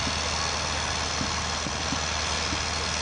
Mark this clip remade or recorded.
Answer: recorded